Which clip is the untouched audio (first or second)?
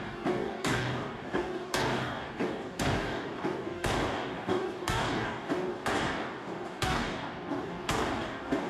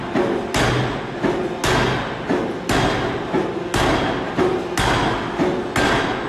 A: second